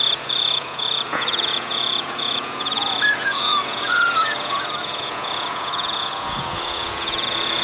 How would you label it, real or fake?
fake